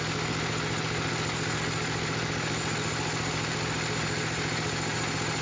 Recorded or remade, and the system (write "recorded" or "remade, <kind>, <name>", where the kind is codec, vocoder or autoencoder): recorded